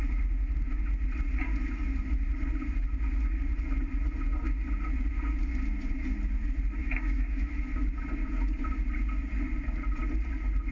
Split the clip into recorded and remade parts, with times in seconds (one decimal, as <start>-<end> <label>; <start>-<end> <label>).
0.0-6.8 recorded; 6.8-7.5 remade; 7.5-10.7 recorded